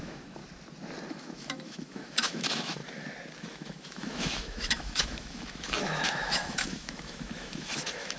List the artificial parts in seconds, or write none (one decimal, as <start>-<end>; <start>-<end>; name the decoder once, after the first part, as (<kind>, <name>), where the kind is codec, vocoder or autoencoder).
0.0-0.4 (autoencoder, DAC-VAE); 1.1-2.8; 3.4-8.2